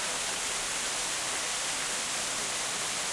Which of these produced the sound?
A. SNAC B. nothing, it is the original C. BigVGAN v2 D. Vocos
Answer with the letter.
B